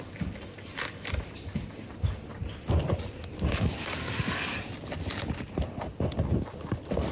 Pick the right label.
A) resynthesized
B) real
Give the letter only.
B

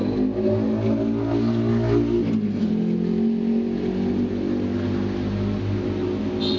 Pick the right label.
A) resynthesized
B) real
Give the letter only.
B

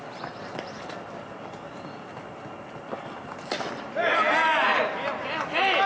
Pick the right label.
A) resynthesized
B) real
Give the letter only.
B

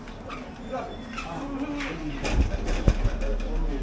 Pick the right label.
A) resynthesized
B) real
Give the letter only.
B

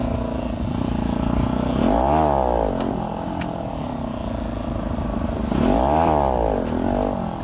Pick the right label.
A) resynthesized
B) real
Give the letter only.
B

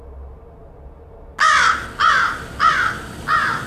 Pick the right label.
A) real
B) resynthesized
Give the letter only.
A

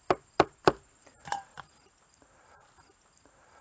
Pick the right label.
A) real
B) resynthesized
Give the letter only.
A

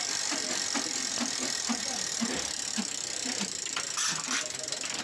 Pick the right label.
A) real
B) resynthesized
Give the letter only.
A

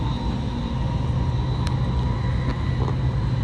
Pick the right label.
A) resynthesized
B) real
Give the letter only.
B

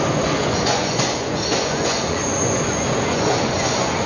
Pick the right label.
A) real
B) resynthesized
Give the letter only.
B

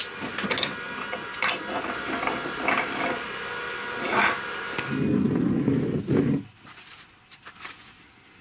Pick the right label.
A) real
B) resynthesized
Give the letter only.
A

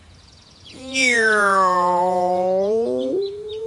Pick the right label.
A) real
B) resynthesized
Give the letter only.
B